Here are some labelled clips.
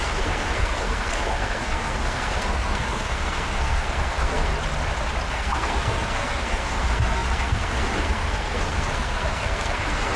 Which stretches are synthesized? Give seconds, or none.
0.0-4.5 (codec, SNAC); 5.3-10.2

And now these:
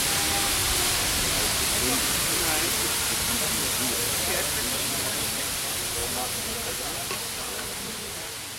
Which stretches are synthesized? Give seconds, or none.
6.0-6.7 (vocoder, BigVGAN v2)

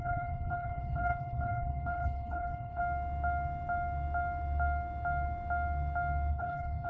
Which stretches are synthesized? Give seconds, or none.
0.0-2.8 (codec, HILCodec); 6.3-6.9

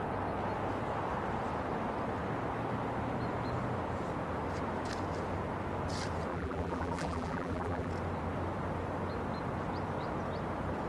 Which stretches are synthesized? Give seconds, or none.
6.3-7.9 (vocoder, BigVGAN v2)